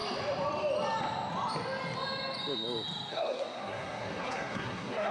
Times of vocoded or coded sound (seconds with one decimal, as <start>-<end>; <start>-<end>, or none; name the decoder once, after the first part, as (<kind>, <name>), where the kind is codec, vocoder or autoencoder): 3.1-5.1 (codec, SNAC)